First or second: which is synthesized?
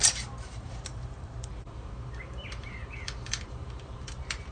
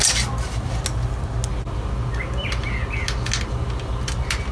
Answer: first